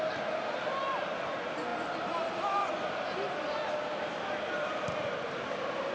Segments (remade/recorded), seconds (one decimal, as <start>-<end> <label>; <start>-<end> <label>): 0.0-5.9 recorded